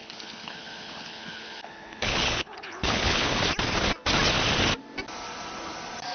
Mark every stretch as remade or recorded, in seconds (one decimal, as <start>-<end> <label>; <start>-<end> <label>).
0.0-3.4 remade; 3.4-6.1 recorded